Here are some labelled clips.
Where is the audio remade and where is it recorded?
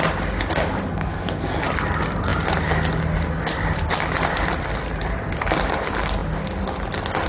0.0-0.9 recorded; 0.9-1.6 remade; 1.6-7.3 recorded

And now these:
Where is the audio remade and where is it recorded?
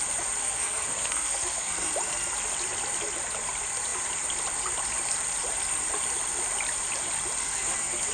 0.0-0.4 recorded; 0.4-1.9 remade; 1.9-7.4 recorded; 7.4-8.1 remade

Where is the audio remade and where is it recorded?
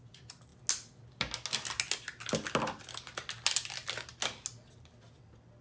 0.0-5.6 recorded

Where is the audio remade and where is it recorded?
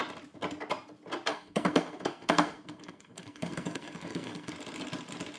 0.0-1.3 recorded; 1.3-4.5 remade; 4.5-5.4 recorded